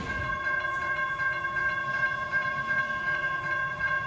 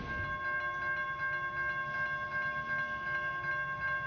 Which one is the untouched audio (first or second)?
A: second